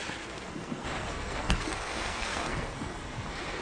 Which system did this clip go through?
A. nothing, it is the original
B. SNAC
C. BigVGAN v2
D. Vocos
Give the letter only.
B